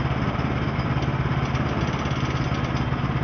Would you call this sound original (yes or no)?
yes